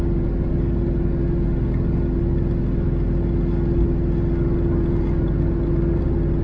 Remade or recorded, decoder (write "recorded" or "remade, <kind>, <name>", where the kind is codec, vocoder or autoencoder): recorded